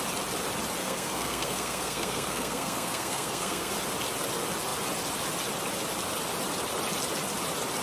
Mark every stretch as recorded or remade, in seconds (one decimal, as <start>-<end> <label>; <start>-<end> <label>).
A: 0.0-0.8 recorded; 0.8-3.7 remade; 3.7-7.8 recorded